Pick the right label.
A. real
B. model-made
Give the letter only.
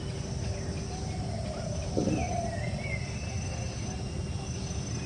A